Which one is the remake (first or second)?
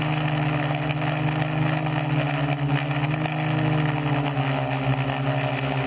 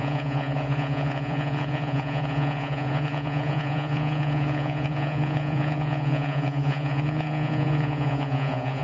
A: second